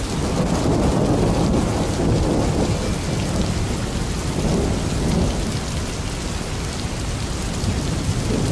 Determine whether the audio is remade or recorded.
recorded